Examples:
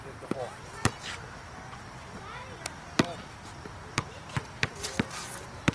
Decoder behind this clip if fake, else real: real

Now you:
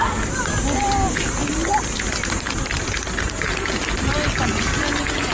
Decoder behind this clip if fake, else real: real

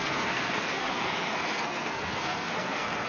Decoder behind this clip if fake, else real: fake, codec, SNAC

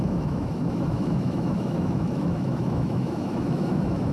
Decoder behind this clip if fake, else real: fake, autoencoder, DAC-VAE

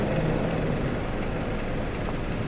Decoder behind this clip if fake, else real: real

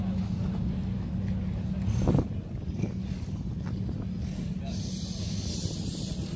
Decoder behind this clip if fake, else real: real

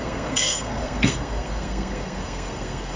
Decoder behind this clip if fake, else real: fake, codec, SNAC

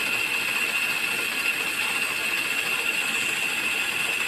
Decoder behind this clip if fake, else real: real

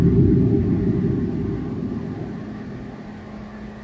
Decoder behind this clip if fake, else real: real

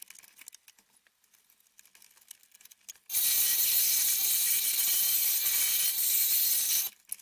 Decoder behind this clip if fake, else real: real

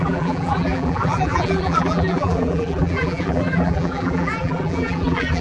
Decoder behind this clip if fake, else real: fake, vocoder, BigVGAN v2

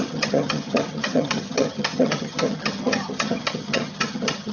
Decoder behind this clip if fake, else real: fake, vocoder, HiFi-GAN